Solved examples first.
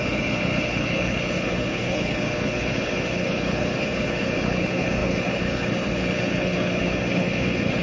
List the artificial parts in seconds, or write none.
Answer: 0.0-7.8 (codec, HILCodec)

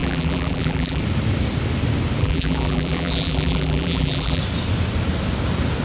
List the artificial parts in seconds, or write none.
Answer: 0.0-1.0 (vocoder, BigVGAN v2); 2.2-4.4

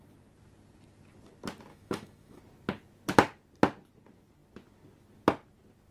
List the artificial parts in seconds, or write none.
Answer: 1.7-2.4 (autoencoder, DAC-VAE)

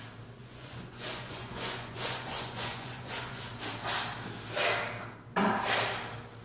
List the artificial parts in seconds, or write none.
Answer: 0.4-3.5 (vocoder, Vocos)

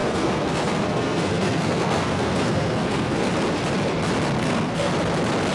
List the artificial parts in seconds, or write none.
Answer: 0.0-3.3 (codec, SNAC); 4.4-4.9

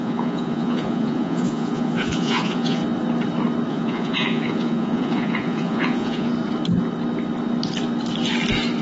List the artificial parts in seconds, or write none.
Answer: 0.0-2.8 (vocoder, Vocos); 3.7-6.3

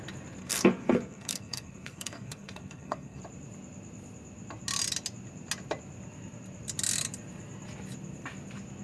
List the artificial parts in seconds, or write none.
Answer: 0.4-3.2 (codec, SNAC)

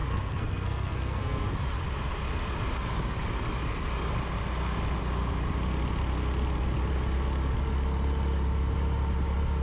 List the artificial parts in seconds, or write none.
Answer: 0.0-1.5 (codec, SNAC)